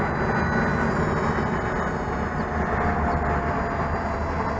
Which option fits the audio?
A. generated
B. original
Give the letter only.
B